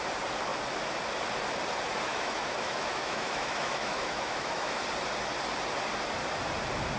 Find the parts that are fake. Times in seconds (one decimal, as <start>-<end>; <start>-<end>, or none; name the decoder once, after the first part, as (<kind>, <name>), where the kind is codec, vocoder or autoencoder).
2.1-4.8 (autoencoder, DAC-VAE)

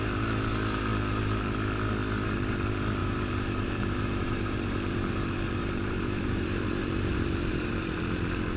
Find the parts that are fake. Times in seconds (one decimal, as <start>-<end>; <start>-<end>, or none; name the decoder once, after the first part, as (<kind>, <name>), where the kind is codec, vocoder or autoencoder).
3.0-8.0 (vocoder, BigVGAN v2)

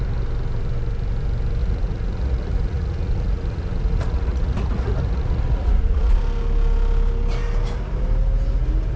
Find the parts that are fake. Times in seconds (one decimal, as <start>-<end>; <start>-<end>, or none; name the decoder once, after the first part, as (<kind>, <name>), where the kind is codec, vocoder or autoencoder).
1.6-6.2 (vocoder, Vocos)